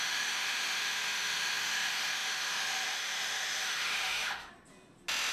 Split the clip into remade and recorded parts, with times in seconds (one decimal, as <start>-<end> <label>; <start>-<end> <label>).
0.0-4.5 remade; 4.5-5.3 recorded